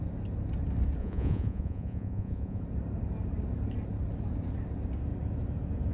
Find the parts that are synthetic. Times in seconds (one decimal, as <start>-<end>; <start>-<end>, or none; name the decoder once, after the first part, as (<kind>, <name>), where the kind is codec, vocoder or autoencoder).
1.0-2.6 (vocoder, Vocos)